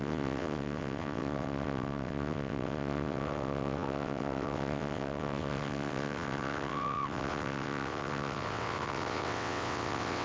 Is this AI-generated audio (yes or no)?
yes